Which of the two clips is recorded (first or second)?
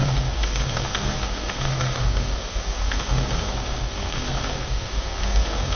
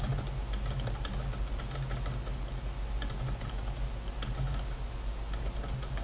second